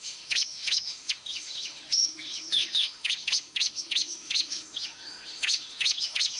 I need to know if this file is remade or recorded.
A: remade